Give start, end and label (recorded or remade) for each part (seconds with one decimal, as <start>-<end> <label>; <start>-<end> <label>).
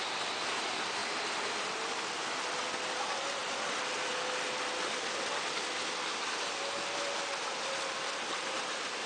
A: 0.0-9.1 recorded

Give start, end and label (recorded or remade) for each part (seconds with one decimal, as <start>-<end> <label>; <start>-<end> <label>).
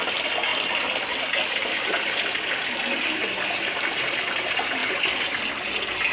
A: 0.0-6.1 recorded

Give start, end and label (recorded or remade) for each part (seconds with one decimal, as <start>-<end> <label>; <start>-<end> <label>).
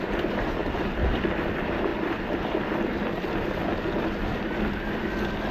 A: 0.0-0.6 recorded; 0.6-1.2 remade; 1.2-1.9 recorded; 1.9-3.1 remade; 3.1-5.5 recorded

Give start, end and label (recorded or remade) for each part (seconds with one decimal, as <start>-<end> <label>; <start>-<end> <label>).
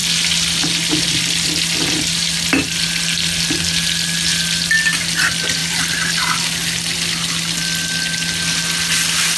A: 0.0-9.4 recorded